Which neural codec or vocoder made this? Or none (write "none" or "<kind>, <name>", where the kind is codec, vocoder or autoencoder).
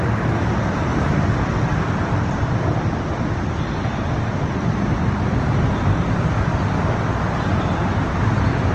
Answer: none